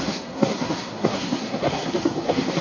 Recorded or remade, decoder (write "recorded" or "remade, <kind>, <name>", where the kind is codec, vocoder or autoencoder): remade, codec, SNAC